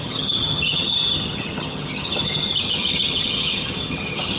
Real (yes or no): no